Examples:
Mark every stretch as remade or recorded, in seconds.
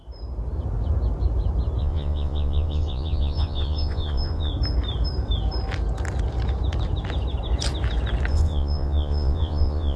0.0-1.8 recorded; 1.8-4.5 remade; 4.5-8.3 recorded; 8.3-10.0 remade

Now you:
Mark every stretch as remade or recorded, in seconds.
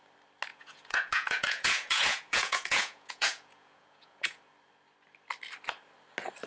0.0-0.5 recorded; 0.5-4.4 remade; 4.4-6.5 recorded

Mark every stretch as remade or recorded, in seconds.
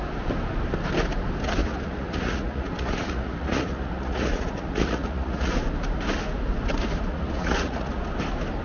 0.0-1.6 recorded; 1.6-5.5 remade; 5.5-7.1 recorded; 7.1-8.0 remade; 8.0-8.6 recorded